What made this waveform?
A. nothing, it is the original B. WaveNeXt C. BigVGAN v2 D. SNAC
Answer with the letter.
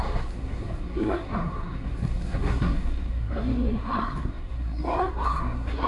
D